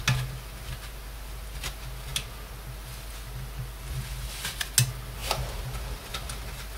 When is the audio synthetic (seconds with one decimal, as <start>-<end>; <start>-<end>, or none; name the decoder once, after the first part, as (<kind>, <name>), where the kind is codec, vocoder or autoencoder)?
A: none

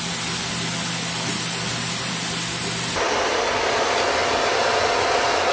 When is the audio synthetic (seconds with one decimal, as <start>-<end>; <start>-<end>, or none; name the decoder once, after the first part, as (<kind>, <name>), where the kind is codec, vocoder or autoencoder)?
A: none